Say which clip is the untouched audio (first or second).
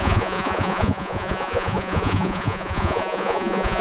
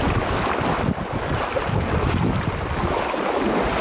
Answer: second